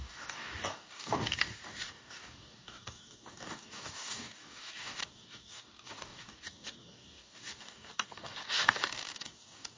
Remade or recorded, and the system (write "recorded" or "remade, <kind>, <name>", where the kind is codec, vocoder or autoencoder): remade, codec, DAC